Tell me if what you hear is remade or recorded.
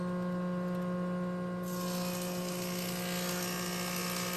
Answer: recorded